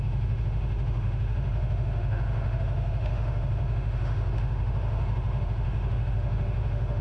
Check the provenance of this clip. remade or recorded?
remade